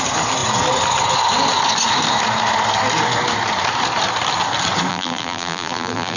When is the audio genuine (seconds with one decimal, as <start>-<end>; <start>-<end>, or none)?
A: 0.0-4.9